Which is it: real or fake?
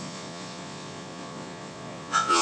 fake